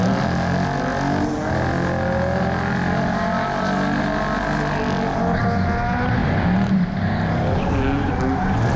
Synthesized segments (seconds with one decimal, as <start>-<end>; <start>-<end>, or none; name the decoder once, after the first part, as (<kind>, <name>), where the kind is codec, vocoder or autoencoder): none